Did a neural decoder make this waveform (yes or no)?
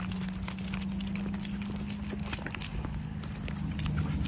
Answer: no